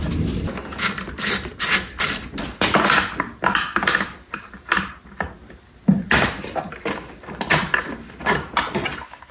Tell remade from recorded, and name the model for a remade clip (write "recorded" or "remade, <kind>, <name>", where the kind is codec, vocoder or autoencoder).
recorded